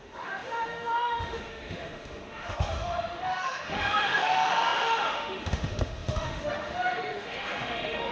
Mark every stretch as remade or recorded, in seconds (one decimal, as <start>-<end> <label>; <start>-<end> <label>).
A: 0.0-8.1 remade

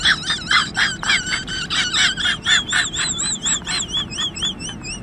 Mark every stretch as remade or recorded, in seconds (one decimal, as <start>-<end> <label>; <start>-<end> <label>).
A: 0.0-0.6 recorded; 0.6-3.6 remade; 3.6-5.0 recorded

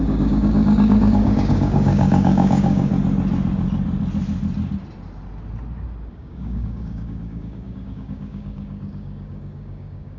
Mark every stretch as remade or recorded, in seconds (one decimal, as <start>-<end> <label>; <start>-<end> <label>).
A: 0.0-2.9 remade; 2.9-6.1 recorded; 6.1-10.2 remade

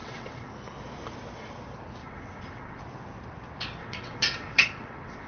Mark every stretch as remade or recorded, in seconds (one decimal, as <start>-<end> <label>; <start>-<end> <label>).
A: 0.0-0.5 remade; 0.5-2.0 recorded; 2.0-2.8 remade; 2.8-3.8 recorded; 3.8-5.3 remade

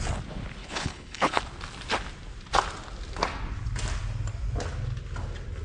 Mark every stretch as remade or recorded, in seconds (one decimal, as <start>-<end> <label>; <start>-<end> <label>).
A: 0.0-0.6 recorded; 0.6-1.4 remade; 1.4-5.6 recorded